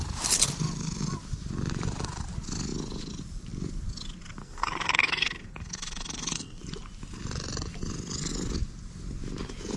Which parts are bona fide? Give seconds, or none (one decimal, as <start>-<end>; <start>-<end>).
0.0-4.4; 6.6-9.8